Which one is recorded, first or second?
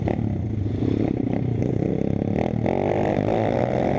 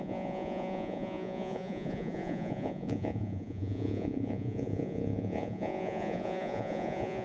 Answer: first